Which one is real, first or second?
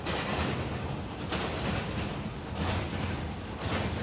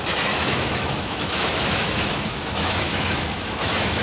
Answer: first